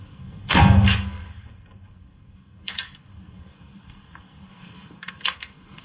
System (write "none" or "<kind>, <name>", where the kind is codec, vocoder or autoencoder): codec, SNAC